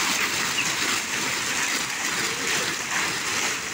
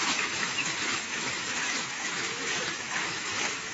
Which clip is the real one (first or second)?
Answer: first